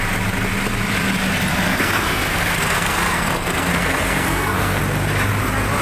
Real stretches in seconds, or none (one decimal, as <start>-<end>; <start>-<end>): 0.0-1.5; 4.8-5.8